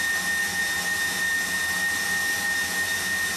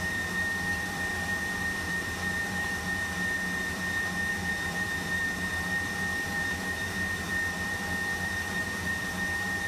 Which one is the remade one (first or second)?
second